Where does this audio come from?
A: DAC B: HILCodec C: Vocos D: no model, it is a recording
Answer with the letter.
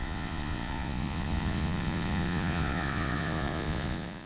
C